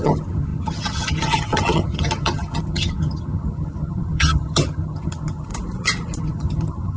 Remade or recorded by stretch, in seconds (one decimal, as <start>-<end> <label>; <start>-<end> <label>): 0.0-5.5 remade; 5.5-6.2 recorded; 6.2-7.0 remade